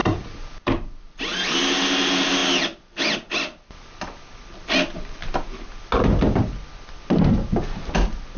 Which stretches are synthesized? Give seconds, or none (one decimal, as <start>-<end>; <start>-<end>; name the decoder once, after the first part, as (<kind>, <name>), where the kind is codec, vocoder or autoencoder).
none